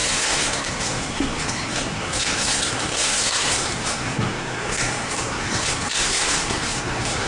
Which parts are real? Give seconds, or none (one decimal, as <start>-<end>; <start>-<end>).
none